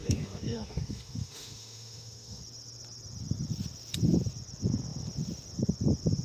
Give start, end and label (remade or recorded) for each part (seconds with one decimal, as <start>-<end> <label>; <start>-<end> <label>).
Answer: 0.0-2.4 remade; 2.4-6.2 recorded